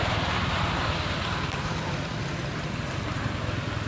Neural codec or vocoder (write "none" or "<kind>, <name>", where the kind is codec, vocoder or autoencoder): none